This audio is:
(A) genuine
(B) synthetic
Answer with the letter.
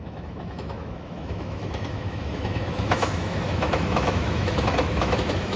B